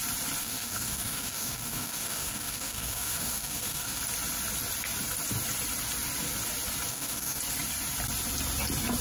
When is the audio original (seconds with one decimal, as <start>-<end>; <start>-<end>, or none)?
0.0-0.4; 4.0-6.9; 7.4-9.0